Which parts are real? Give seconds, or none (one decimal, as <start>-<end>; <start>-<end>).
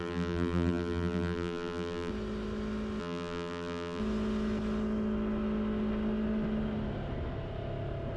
2.1-3.0; 4.0-8.2